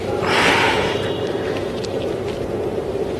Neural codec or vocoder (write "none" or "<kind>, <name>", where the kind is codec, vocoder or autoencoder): vocoder, BigVGAN v2